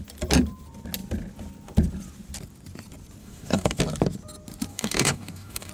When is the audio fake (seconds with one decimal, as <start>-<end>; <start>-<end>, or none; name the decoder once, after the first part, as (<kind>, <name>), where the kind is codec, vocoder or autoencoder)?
3.2-3.8 (codec, DAC); 4.7-5.7